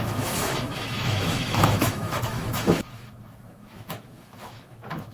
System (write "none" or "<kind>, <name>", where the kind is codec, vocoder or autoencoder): autoencoder, DAC-VAE